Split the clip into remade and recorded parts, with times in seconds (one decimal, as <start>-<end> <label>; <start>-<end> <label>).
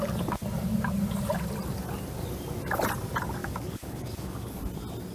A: 0.0-3.4 recorded; 3.4-4.6 remade; 4.6-5.1 recorded